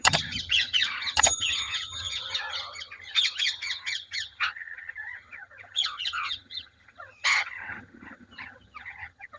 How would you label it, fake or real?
fake